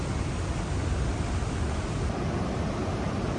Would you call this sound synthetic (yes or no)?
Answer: no